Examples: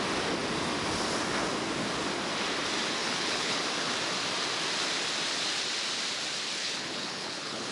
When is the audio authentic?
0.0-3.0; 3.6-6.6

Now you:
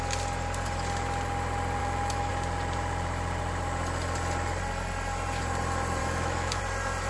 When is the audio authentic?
0.0-1.8; 2.3-6.0; 6.6-7.1

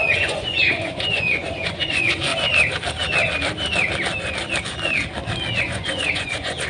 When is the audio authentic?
2.3-5.6

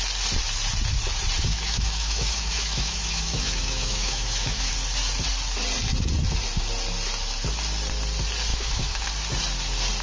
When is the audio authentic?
0.0-1.5; 4.7-8.5; 9.1-10.0